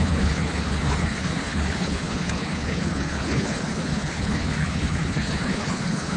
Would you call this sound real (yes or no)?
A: no